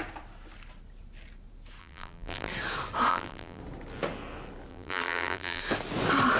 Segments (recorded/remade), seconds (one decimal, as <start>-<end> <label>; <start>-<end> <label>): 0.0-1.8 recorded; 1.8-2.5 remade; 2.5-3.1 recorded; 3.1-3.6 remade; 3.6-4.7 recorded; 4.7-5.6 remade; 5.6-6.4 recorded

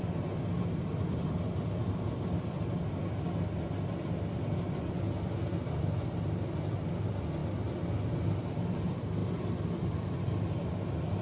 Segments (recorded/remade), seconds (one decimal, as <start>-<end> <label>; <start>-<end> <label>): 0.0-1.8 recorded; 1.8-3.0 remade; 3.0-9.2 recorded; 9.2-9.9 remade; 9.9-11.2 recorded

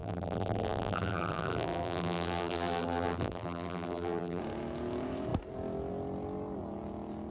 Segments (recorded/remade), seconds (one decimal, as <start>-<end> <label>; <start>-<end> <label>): 0.0-4.4 remade; 4.4-7.3 recorded